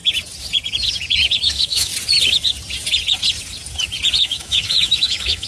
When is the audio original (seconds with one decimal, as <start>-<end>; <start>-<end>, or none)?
0.0-1.4; 1.9-4.2

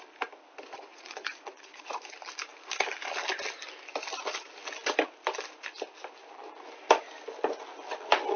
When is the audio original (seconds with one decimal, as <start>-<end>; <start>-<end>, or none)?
0.0-0.9; 2.0-8.4

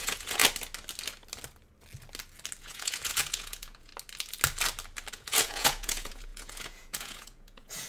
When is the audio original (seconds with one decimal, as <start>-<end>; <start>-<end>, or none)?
0.4-2.6; 3.9-5.1

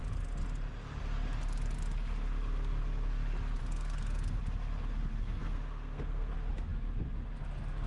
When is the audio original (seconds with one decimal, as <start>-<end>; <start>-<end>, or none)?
0.0-3.6; 4.4-5.1; 6.3-7.9

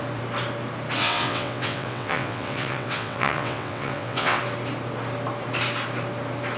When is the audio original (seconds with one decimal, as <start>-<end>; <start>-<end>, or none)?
0.0-1.0; 4.4-6.6

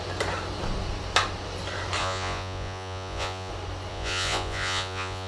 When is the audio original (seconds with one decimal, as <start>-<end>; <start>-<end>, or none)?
0.0-2.0; 3.5-3.9

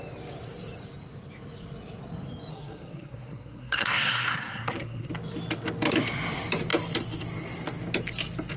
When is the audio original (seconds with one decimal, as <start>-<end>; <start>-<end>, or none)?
0.0-2.5; 5.1-8.6